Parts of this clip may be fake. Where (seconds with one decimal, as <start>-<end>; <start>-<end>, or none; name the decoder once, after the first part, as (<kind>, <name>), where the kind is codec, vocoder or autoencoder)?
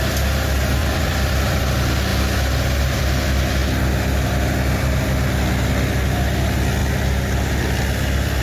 0.8-1.6 (vocoder, BigVGAN v2)